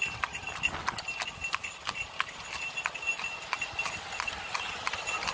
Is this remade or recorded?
recorded